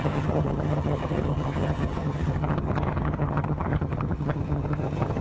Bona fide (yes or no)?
no